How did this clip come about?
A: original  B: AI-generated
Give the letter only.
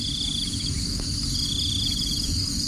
A